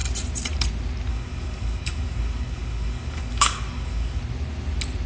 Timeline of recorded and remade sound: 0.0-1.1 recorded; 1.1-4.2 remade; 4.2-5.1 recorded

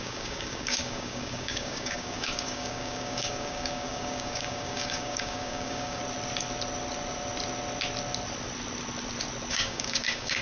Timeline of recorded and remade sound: 0.0-6.0 remade; 6.0-9.5 recorded; 9.5-10.4 remade

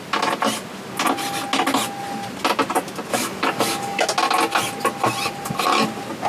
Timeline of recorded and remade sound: 0.0-3.1 recorded; 3.1-4.0 remade; 4.0-6.3 recorded

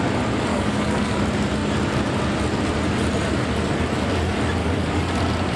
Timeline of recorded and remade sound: 0.0-0.5 recorded; 0.5-1.2 remade; 1.2-4.6 recorded; 4.6-5.1 remade; 5.1-5.6 recorded

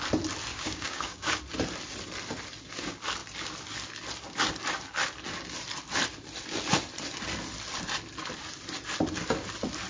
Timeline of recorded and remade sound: 0.0-0.5 recorded; 0.5-1.4 remade; 1.4-9.9 recorded

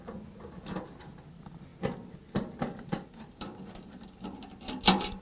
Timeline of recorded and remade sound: 0.0-5.2 recorded

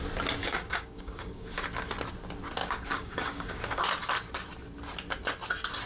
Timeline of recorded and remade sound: 0.0-0.4 recorded; 0.4-1.6 remade; 1.6-2.6 recorded; 2.6-3.8 remade; 3.8-5.9 recorded